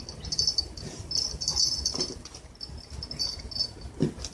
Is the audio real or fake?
real